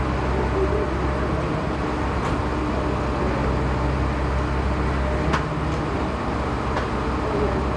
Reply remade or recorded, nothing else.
recorded